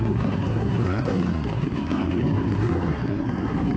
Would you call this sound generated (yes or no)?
yes